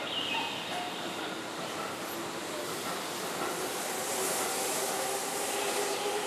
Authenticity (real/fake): real